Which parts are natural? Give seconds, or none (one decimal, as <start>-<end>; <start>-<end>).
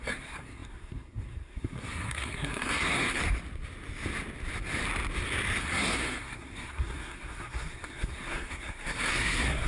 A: 3.2-5.6